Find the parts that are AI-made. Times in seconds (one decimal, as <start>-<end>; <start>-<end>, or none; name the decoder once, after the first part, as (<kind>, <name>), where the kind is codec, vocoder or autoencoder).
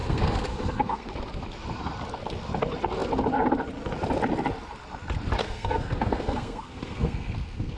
0.0-1.1 (codec, SNAC); 5.4-7.8